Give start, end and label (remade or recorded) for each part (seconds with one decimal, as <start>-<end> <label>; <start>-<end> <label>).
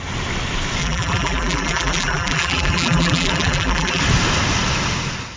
0.0-0.8 recorded; 0.8-4.0 remade; 4.0-5.4 recorded